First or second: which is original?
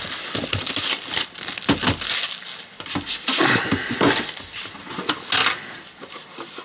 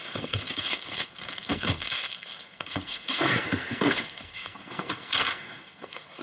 first